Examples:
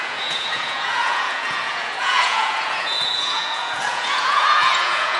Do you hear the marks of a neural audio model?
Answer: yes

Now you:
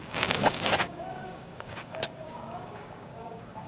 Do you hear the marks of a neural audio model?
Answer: yes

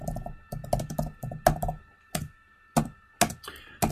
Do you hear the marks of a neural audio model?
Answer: no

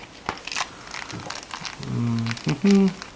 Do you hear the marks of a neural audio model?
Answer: no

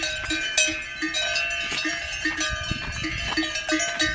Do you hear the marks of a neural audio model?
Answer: no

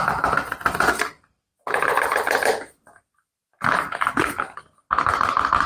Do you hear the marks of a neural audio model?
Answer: no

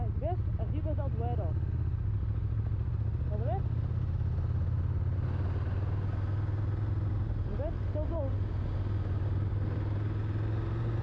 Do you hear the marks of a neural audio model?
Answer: no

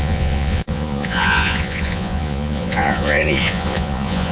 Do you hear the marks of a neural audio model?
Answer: yes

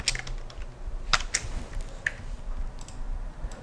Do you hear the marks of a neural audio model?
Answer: no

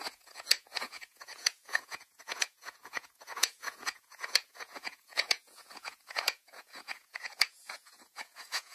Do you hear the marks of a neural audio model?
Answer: yes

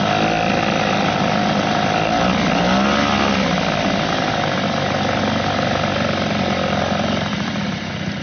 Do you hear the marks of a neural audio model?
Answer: no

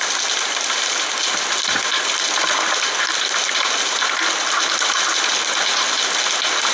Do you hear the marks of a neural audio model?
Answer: no